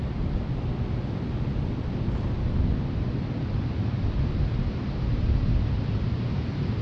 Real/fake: real